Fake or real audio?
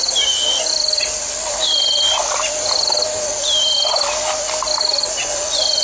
real